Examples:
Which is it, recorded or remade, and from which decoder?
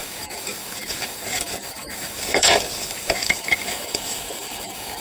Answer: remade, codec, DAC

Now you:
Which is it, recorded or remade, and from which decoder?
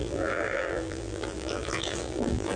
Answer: remade, vocoder, BigVGAN v2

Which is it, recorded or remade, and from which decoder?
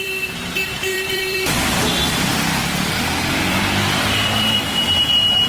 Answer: remade, vocoder, BigVGAN v2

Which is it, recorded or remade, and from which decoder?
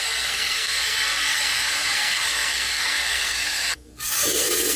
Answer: remade, codec, SNAC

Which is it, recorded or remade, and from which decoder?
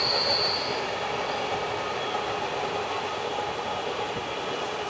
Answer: recorded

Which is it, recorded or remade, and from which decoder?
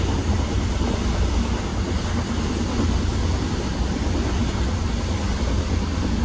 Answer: recorded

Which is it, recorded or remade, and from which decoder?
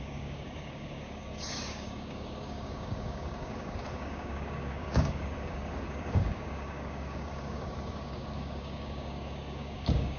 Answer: remade, codec, DAC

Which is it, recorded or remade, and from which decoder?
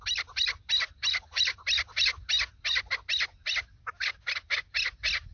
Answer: recorded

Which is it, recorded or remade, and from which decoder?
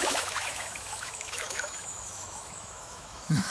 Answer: remade, autoencoder, DAC-VAE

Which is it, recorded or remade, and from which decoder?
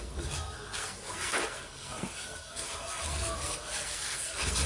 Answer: remade, codec, SNAC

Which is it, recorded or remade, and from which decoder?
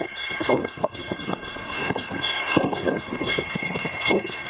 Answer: remade, codec, SNAC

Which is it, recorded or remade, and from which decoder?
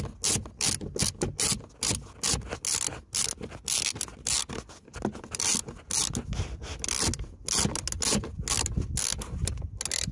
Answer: recorded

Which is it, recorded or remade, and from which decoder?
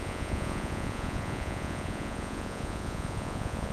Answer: remade, vocoder, Vocos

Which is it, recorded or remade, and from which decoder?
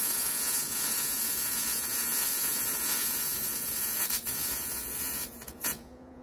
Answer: remade, vocoder, Vocos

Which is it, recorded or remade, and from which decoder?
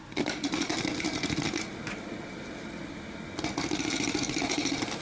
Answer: recorded